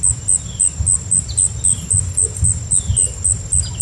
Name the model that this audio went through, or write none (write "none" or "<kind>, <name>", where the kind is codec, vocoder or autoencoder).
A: none